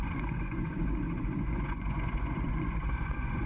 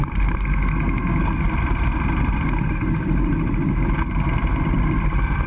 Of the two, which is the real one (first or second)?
second